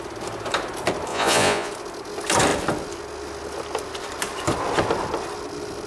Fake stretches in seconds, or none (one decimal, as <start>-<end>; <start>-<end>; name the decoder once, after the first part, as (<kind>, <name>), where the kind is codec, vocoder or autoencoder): 1.1-1.7 (vocoder, Vocos)